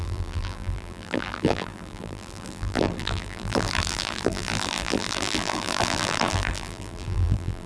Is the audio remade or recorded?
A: remade